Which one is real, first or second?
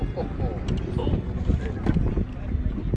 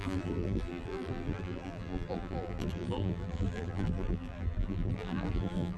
first